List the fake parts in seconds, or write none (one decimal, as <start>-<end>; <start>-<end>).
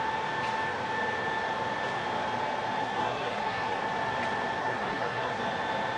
2.8-3.8; 4.6-5.4